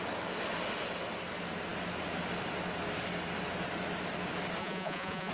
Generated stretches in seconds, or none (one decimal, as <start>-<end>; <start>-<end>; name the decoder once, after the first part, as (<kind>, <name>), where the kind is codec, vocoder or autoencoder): 4.6-5.3 (vocoder, Vocos)